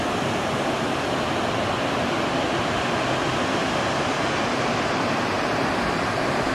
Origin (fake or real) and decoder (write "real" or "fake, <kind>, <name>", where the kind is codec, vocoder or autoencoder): real